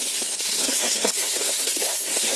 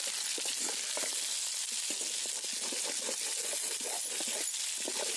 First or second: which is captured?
second